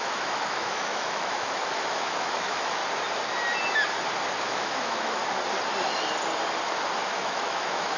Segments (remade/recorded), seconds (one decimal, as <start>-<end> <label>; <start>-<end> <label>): 0.0-2.8 remade; 2.8-4.4 recorded; 4.4-5.2 remade; 5.2-7.0 recorded; 7.0-8.0 remade